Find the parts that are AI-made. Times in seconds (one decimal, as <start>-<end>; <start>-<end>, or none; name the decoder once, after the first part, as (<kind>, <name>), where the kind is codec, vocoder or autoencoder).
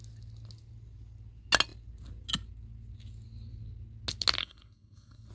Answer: 4.4-5.3 (codec, SNAC)